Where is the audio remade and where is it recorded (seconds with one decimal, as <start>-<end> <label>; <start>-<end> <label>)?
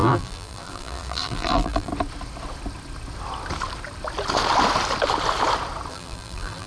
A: 0.0-1.9 remade; 1.9-5.9 recorded; 5.9-6.7 remade